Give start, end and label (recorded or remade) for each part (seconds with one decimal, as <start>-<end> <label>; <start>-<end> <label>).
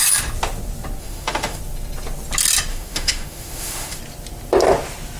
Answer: 0.0-1.0 recorded; 1.0-1.6 remade; 1.6-2.7 recorded; 2.7-4.0 remade; 4.0-5.2 recorded